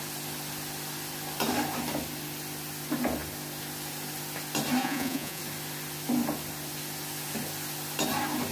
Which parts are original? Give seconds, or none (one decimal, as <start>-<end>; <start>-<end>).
0.0-4.8; 5.4-8.5